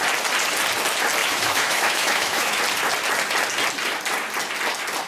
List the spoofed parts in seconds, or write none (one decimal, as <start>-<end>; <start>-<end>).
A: 1.2-2.6